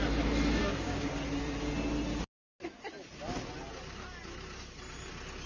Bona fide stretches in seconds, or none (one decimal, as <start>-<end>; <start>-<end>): 0.0-0.6; 1.1-5.5